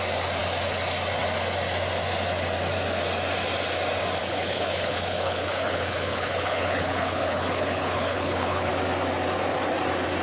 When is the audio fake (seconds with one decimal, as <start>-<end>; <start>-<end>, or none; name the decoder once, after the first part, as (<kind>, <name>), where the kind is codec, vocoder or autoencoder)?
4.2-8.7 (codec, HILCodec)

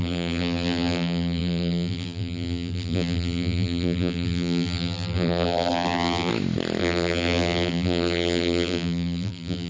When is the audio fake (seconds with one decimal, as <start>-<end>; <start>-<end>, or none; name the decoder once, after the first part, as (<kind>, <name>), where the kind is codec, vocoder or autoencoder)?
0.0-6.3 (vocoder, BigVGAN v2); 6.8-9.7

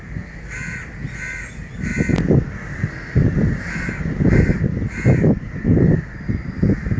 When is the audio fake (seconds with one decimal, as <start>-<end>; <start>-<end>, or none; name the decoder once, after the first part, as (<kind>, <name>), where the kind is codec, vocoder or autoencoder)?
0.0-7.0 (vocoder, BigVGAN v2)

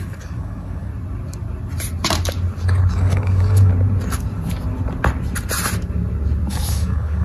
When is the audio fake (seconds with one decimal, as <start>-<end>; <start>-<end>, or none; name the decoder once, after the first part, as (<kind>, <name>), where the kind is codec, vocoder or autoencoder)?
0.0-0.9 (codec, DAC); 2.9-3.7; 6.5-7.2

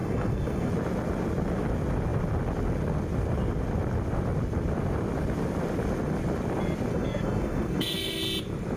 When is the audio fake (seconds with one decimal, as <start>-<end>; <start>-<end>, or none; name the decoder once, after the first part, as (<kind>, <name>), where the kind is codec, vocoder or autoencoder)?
0.0-0.7 (codec, SNAC); 6.9-8.2